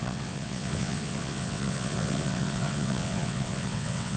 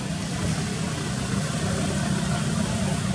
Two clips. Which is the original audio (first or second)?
second